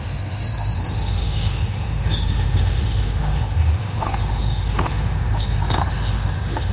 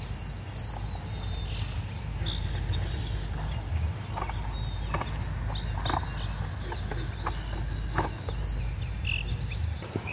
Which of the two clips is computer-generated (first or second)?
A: first